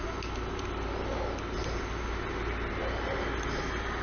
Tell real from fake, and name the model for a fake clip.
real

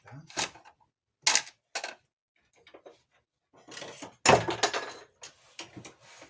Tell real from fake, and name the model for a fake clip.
real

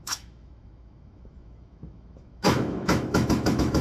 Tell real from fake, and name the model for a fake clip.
fake, autoencoder, DAC-VAE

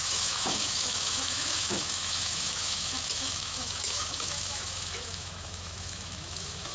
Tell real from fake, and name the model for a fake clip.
fake, autoencoder, DAC-VAE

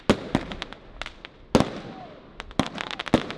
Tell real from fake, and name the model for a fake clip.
real